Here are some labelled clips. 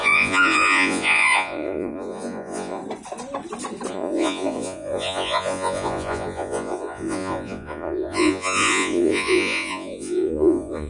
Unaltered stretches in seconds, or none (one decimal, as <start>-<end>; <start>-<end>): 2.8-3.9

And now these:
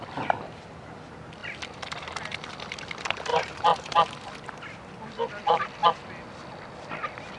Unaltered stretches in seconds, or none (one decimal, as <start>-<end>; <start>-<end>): 0.0-3.3; 4.1-7.4

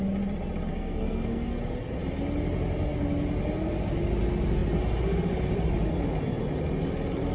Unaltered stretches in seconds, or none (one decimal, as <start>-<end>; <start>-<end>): 0.0-0.7; 1.6-7.3